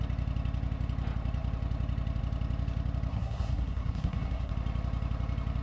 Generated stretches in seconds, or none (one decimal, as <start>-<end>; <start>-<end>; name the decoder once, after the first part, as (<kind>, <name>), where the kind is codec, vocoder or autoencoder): 3.1-4.5 (codec, SNAC)